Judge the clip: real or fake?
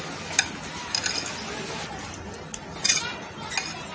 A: real